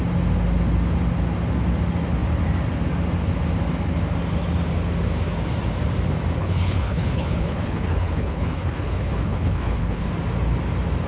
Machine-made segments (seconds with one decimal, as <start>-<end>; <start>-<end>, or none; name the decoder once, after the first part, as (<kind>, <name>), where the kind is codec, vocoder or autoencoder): 6.4-10.1 (codec, HILCodec)